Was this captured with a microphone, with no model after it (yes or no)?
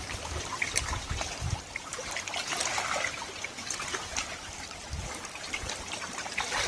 yes